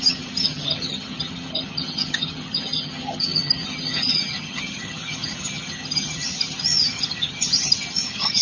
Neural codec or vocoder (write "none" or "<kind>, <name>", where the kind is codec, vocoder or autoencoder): vocoder, HiFi-GAN